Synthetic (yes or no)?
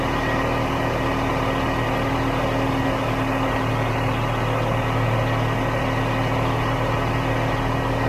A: no